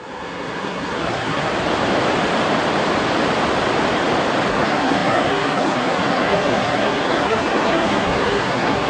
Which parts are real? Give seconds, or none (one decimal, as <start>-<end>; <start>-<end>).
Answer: 1.5-4.5